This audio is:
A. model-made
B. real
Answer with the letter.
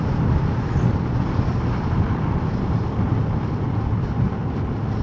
B